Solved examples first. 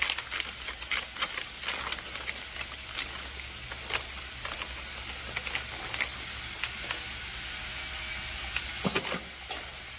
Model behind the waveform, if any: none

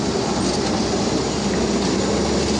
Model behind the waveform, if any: none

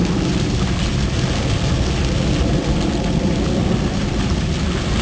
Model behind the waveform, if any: none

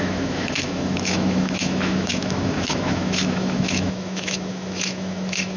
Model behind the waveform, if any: autoencoder, DAC-VAE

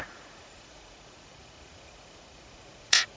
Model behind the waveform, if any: vocoder, Vocos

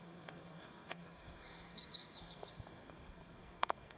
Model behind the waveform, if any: codec, SNAC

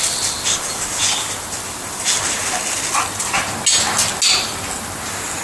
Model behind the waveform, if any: none